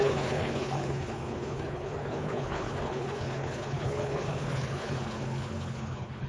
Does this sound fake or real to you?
fake